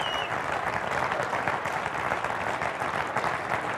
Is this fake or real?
real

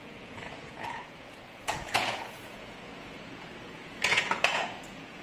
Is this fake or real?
fake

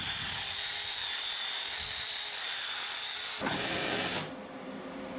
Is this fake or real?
fake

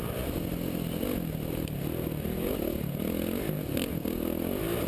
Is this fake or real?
real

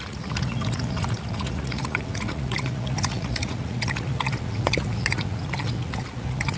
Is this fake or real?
fake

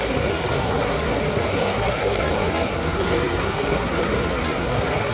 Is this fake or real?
fake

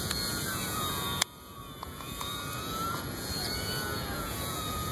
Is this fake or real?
fake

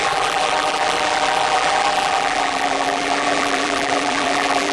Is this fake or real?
fake